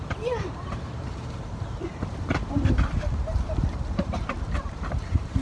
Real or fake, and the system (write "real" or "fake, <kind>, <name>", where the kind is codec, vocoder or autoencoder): fake, vocoder, BigVGAN v2